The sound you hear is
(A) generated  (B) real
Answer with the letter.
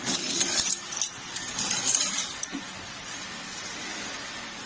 B